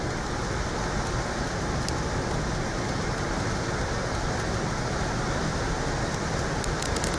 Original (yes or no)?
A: yes